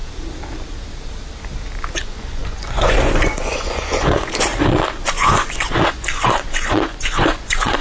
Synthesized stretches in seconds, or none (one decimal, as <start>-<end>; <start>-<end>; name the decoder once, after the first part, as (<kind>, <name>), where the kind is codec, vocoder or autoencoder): 1.9-4.5 (vocoder, Vocos); 5.1-7.8